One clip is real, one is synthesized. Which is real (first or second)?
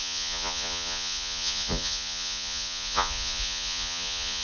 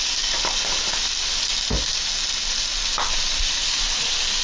second